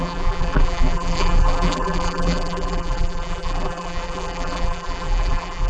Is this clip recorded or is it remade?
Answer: remade